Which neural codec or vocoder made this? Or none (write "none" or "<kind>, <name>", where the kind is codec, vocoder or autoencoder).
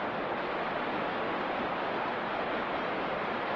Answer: none